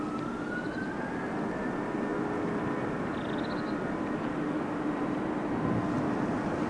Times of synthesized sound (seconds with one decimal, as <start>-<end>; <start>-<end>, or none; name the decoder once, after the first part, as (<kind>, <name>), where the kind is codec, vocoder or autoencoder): none